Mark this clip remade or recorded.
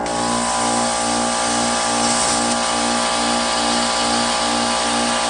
recorded